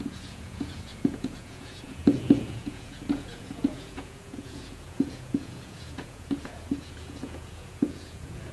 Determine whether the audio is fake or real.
fake